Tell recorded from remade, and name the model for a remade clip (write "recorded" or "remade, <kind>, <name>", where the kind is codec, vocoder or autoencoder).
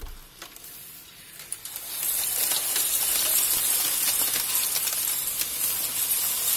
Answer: recorded